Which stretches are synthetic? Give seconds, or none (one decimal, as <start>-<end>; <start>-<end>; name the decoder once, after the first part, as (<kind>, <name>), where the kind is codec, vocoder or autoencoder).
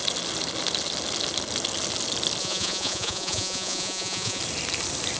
2.4-4.4 (vocoder, Vocos)